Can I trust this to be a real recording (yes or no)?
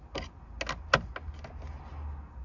yes